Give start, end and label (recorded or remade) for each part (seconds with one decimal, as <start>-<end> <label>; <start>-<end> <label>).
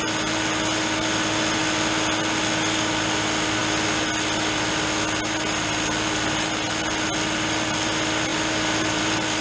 0.0-9.4 recorded